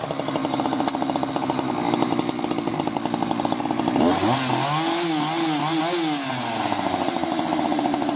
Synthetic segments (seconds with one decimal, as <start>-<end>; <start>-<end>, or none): 0.4-1.3; 2.7-3.6